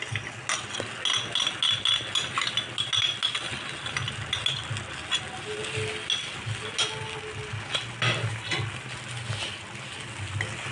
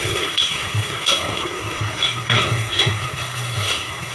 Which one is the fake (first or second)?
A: second